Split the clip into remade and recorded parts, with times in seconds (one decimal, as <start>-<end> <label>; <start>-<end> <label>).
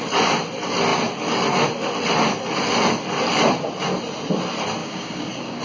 0.0-4.8 recorded; 4.8-5.6 remade